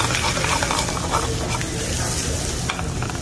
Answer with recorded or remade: recorded